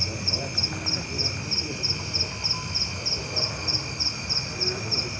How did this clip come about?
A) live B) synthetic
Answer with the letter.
A